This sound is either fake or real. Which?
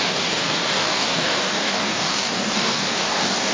fake